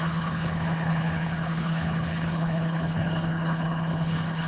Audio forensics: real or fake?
fake